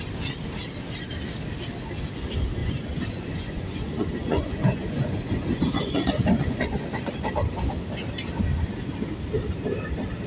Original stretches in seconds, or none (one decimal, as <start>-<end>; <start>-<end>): 0.0-2.6; 7.1-10.3